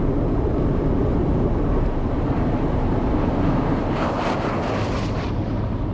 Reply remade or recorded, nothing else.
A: recorded